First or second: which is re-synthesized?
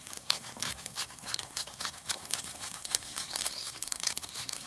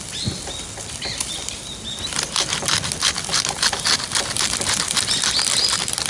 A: first